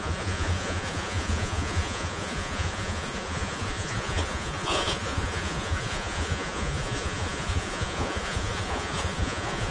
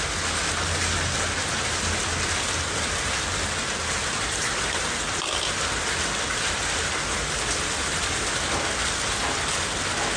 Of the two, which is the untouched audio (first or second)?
second